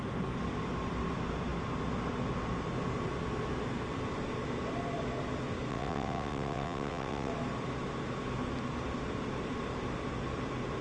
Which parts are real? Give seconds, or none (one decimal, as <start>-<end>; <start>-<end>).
0.0-5.7; 7.3-10.8